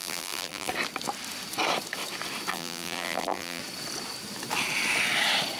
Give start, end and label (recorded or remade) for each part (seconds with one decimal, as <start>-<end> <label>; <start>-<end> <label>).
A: 0.0-0.7 remade; 0.7-2.5 recorded; 2.5-3.6 remade; 3.6-5.6 recorded